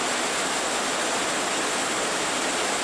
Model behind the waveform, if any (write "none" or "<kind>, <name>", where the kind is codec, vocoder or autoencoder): none